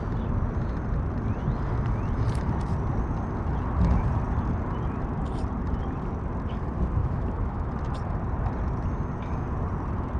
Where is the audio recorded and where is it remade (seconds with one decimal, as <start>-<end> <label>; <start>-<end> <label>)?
0.0-7.0 recorded; 7.0-7.7 remade; 7.7-10.2 recorded